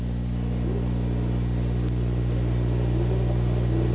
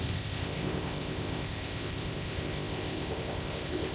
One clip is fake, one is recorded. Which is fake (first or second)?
second